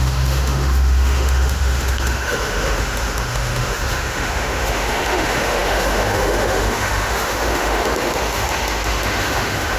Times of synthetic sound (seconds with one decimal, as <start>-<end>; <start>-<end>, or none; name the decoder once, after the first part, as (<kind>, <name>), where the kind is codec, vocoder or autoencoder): 0.0-9.8 (autoencoder, DAC-VAE)